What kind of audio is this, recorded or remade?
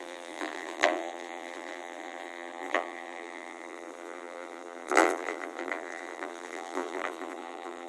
remade